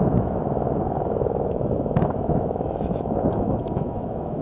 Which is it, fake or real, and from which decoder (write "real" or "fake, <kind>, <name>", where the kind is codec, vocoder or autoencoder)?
fake, autoencoder, DAC-VAE